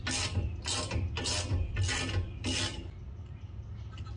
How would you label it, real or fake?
real